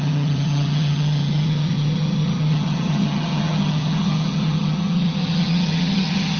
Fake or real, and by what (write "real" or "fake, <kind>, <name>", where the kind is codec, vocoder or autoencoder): fake, vocoder, HiFi-GAN